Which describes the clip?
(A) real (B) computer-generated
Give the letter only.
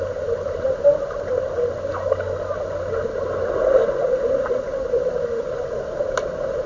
A